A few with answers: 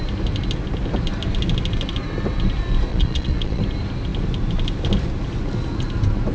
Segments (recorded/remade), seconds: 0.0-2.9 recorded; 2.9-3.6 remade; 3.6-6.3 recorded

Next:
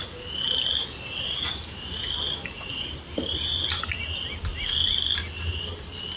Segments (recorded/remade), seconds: 0.0-6.2 recorded

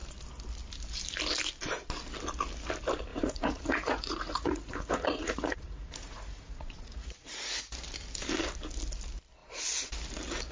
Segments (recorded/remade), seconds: 0.0-3.1 recorded; 3.1-7.6 remade; 7.6-10.5 recorded

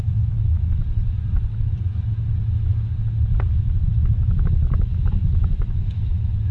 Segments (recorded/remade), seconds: 0.0-0.8 remade; 0.8-2.4 recorded; 2.4-2.9 remade; 2.9-3.5 recorded; 3.5-6.5 remade

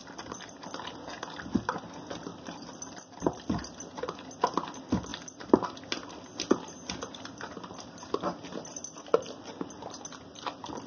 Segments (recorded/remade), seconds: 0.0-0.7 remade; 0.7-2.3 recorded; 2.3-4.0 remade; 4.0-5.1 recorded; 5.1-7.9 remade; 7.9-10.9 recorded

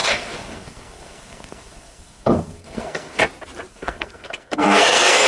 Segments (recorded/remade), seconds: 0.0-3.2 remade; 3.2-3.7 recorded; 3.7-5.3 remade

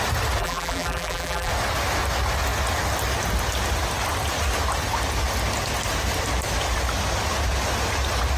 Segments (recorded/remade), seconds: 0.0-0.4 recorded; 0.4-1.5 remade; 1.5-8.4 recorded

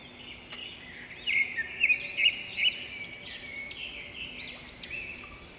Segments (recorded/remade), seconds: 0.0-0.6 recorded; 0.6-1.1 remade; 1.1-5.6 recorded